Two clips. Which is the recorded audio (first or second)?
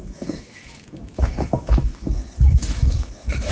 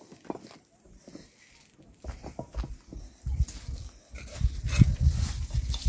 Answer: second